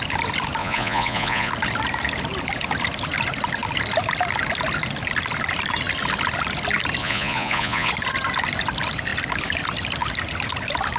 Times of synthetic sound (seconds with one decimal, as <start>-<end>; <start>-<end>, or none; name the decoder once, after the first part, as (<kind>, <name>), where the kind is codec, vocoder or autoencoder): 0.6-1.5 (vocoder, Vocos); 7.0-7.9